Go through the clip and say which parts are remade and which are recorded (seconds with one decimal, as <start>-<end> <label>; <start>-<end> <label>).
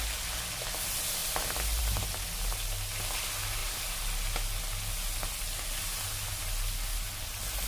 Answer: 0.0-7.7 recorded